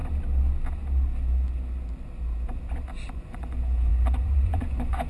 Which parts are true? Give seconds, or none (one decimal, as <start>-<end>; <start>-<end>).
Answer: 0.0-3.1